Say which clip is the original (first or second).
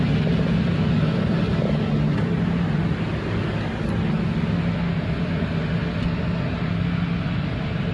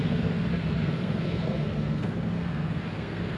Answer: first